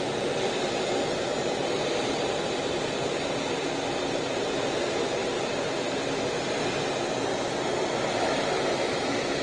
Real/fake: real